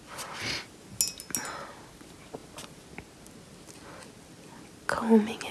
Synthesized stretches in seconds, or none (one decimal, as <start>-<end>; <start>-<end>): none